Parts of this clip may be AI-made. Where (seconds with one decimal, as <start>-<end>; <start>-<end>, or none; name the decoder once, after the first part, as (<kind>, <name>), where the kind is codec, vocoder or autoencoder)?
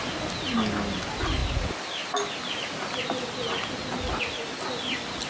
none